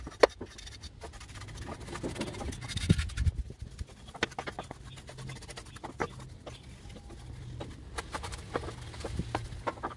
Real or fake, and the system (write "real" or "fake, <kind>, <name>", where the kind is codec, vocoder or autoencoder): real